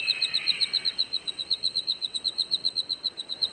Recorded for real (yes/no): no